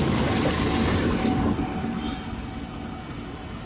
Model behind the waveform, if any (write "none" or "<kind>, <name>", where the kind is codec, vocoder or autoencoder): none